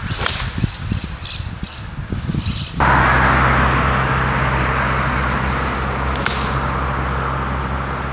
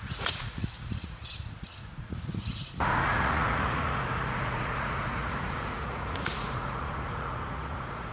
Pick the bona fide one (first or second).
first